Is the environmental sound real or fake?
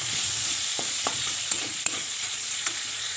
fake